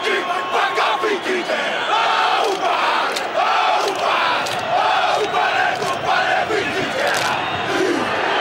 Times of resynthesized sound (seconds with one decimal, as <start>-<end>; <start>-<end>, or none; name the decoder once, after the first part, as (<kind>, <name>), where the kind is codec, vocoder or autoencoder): 2.0-5.2 (vocoder, BigVGAN v2)